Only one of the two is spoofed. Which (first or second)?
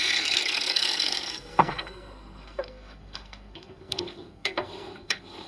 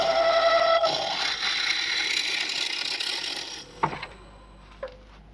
first